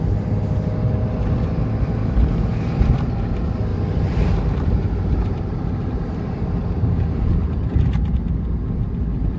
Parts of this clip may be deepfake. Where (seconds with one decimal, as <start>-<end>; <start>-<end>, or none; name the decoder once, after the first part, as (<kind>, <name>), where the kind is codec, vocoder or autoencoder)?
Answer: 2.0-3.3 (vocoder, BigVGAN v2); 3.7-8.3